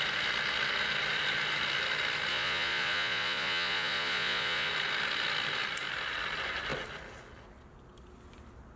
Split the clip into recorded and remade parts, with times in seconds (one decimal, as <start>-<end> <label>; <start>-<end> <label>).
0.0-2.3 recorded; 2.3-4.7 remade; 4.7-8.8 recorded